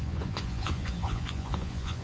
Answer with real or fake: fake